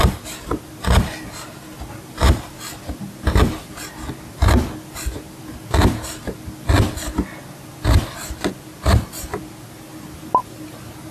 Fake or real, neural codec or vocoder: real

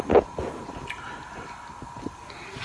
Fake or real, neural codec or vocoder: real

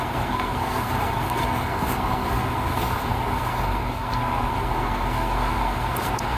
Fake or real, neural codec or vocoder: fake, codec, SNAC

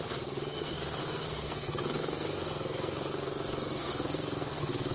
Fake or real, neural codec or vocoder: fake, codec, SNAC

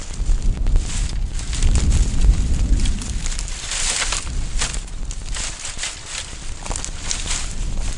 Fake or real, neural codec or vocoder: real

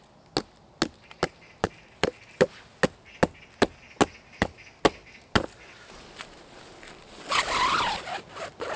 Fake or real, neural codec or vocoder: real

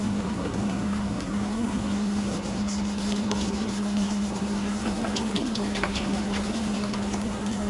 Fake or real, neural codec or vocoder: fake, codec, SNAC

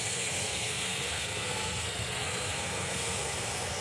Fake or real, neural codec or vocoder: fake, codec, SNAC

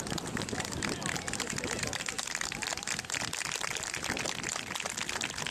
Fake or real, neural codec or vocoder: real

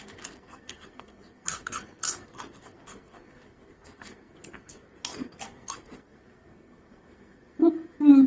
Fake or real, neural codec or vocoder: fake, codec, SNAC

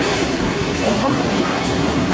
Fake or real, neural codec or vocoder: fake, codec, SNAC